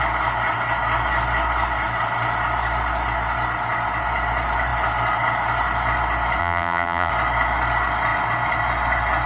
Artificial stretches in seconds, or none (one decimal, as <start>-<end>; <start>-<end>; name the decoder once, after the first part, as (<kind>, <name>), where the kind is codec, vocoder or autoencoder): 6.4-7.1 (vocoder, BigVGAN v2)